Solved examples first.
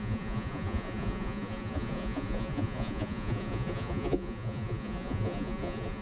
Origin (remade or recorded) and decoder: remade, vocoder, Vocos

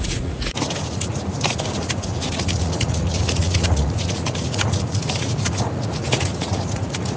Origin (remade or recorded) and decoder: remade, vocoder, Vocos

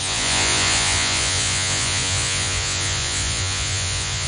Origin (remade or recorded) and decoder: remade, vocoder, Vocos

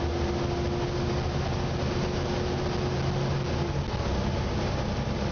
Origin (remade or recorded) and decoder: recorded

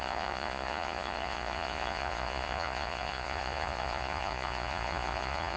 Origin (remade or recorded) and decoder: remade, vocoder, Vocos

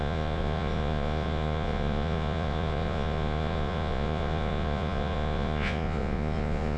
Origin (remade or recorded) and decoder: remade, vocoder, Vocos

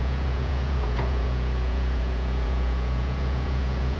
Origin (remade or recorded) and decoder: remade, vocoder, Vocos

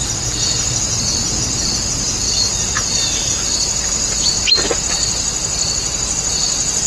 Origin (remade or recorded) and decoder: recorded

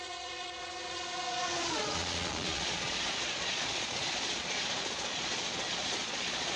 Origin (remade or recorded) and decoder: remade, vocoder, Vocos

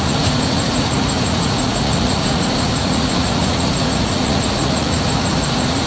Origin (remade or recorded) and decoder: remade, vocoder, Vocos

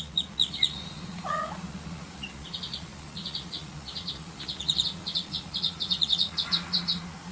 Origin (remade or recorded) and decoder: remade, vocoder, Vocos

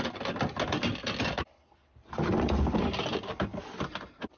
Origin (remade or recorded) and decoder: recorded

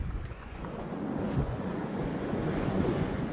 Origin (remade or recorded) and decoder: remade, vocoder, Vocos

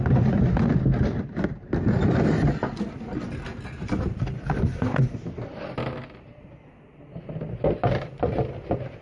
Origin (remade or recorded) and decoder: recorded